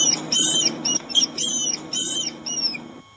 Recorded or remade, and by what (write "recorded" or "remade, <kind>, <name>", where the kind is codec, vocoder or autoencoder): recorded